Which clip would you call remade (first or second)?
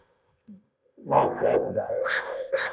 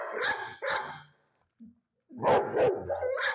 first